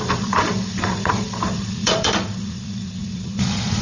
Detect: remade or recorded remade